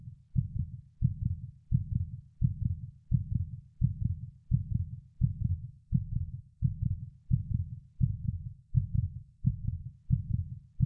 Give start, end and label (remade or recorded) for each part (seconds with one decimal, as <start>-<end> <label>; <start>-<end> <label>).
0.0-5.5 recorded; 5.5-7.0 remade; 7.0-8.1 recorded; 8.1-9.9 remade; 9.9-10.9 recorded